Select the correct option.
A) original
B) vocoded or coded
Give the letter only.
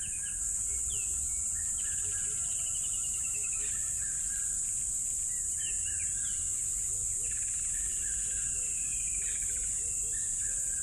A